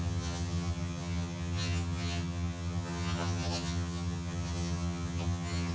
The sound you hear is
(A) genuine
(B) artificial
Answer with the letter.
B